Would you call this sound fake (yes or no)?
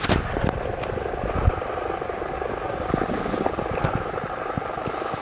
no